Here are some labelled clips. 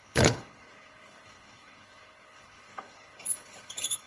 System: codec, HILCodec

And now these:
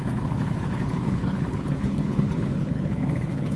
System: codec, HILCodec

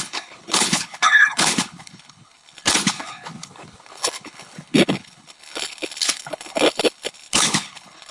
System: codec, HILCodec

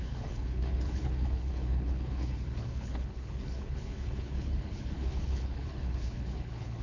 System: codec, HILCodec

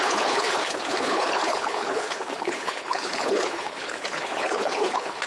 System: codec, HILCodec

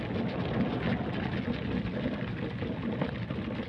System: none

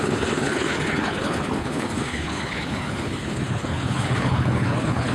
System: codec, HILCodec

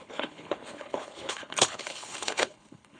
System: codec, HILCodec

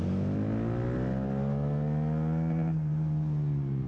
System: none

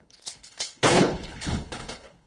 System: codec, HILCodec